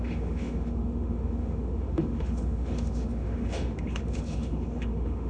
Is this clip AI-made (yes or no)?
yes